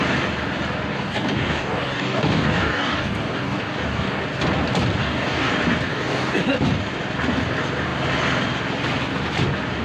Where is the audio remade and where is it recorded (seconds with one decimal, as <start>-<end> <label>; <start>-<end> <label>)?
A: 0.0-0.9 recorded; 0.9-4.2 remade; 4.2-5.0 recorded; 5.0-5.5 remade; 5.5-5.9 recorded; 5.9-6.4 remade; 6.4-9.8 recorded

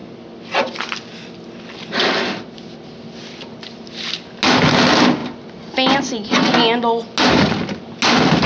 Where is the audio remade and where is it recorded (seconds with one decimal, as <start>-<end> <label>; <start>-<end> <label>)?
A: 0.0-8.5 recorded

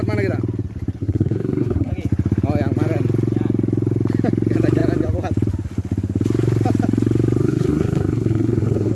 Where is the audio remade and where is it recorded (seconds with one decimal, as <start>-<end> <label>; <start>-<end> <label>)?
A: 0.0-1.0 recorded; 1.0-1.9 remade; 1.9-7.4 recorded; 7.4-8.9 remade

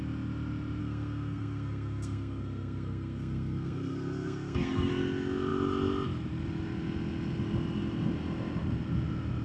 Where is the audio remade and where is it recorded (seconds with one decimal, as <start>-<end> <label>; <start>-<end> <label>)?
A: 0.0-0.8 recorded; 0.8-4.9 remade; 4.9-9.4 recorded

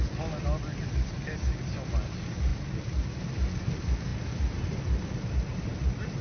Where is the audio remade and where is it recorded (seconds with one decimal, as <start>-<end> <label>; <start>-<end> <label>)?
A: 0.0-6.2 recorded